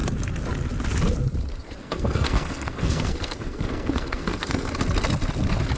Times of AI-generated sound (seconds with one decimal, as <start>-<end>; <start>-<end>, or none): 1.8-4.7